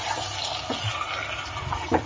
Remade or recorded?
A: recorded